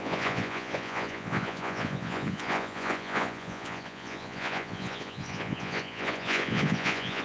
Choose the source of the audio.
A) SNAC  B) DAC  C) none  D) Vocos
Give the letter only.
D